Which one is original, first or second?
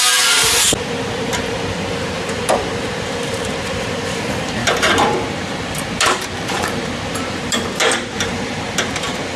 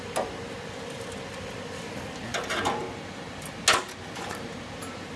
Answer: second